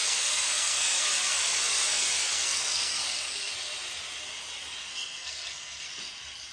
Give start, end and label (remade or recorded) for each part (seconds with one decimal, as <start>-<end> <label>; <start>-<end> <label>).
0.0-3.5 remade; 3.5-4.9 recorded; 4.9-5.9 remade; 5.9-6.5 recorded